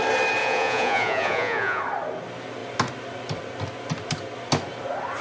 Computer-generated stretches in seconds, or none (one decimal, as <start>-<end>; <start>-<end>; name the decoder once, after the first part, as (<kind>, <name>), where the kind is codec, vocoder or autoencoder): 0.4-1.8 (vocoder, Vocos)

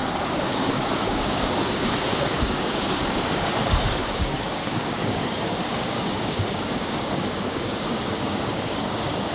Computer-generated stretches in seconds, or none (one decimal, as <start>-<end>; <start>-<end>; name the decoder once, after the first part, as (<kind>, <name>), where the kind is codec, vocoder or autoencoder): 0.0-9.3 (codec, DAC)

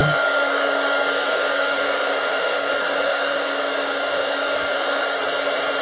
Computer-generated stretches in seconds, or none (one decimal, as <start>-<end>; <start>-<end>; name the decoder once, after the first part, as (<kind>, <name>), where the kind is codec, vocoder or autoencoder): 0.0-2.7 (codec, DAC); 3.1-5.2

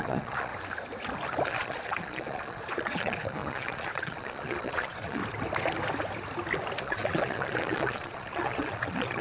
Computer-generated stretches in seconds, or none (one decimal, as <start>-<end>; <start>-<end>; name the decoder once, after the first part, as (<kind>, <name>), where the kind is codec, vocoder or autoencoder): 0.0-0.5 (vocoder, Vocos); 1.5-5.2; 6.8-9.2

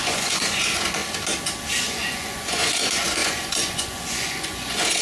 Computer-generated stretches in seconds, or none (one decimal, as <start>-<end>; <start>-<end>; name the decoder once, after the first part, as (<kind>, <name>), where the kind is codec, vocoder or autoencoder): 0.0-1.0 (vocoder, Vocos); 1.8-5.0